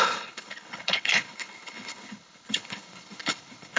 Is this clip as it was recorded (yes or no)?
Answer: no